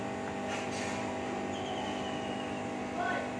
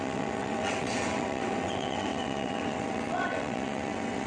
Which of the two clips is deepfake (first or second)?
second